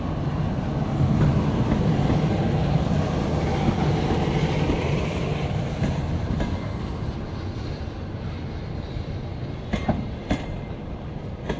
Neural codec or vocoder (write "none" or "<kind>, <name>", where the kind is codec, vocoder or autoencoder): none